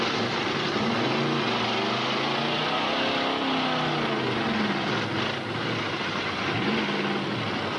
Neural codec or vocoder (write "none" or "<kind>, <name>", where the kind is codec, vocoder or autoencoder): none